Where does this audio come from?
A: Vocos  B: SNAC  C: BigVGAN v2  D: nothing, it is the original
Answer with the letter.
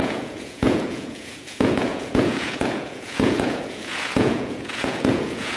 A